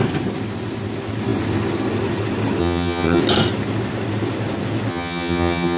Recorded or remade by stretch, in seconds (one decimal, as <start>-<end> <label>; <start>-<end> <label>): 0.0-2.6 recorded; 2.6-3.2 remade; 3.2-4.9 recorded; 4.9-5.8 remade